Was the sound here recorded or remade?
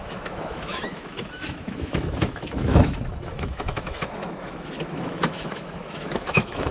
remade